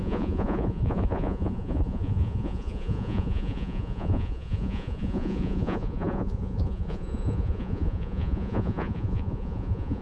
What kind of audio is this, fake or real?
fake